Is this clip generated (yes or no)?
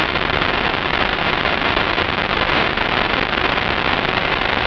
yes